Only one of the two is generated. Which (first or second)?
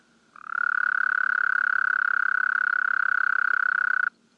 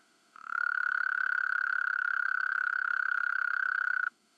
second